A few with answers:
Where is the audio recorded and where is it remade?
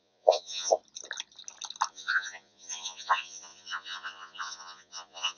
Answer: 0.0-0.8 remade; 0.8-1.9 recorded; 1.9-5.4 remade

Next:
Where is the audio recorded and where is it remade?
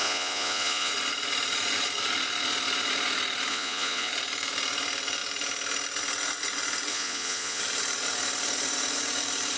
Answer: 0.0-0.9 remade; 0.9-3.5 recorded; 3.5-4.1 remade; 4.1-6.9 recorded; 6.9-7.6 remade; 7.6-9.6 recorded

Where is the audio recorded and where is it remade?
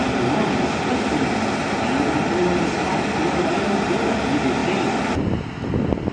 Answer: 0.0-6.1 recorded